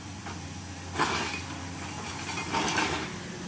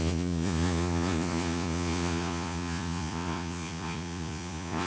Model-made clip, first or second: second